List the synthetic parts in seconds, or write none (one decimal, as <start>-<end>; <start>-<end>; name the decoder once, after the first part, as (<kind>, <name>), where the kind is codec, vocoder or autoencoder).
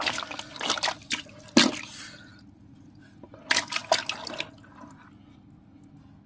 none